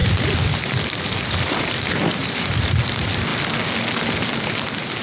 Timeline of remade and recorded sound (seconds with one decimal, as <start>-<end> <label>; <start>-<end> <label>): 0.0-2.9 remade; 2.9-5.0 recorded